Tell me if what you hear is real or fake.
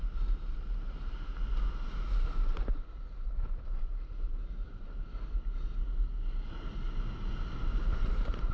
real